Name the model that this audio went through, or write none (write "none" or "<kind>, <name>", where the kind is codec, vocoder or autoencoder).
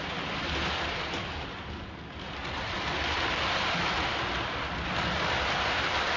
none